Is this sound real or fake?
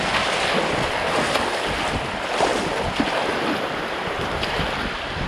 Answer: real